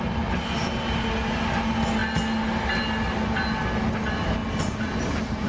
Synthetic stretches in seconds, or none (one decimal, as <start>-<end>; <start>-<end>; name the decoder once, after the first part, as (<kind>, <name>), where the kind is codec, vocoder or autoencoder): none